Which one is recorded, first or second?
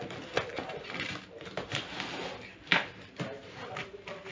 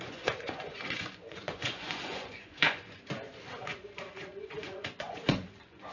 first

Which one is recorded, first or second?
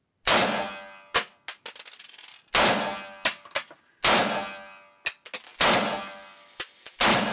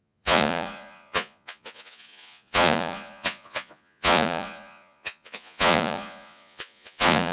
first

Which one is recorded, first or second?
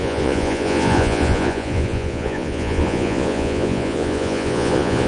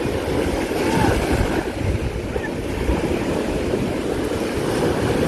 second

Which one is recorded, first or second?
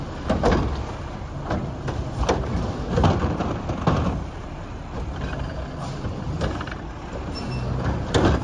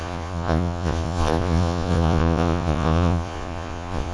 first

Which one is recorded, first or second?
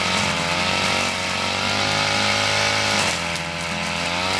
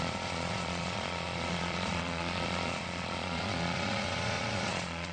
first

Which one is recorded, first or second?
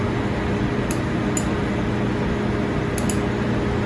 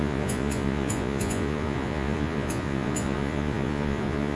first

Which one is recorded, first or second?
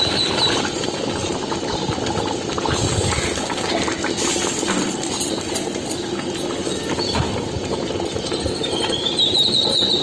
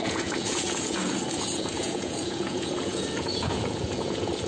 first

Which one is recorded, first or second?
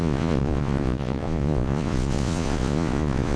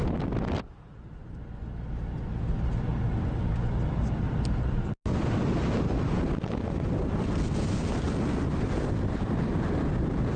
second